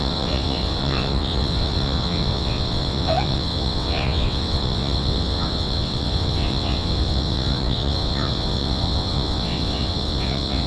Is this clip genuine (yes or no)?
no